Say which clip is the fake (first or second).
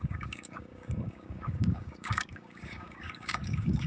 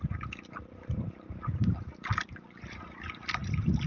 first